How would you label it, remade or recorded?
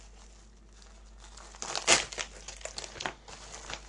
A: recorded